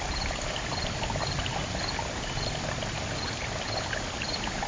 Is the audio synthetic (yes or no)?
no